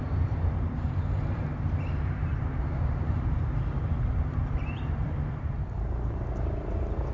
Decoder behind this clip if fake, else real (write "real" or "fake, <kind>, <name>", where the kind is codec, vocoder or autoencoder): fake, vocoder, BigVGAN v2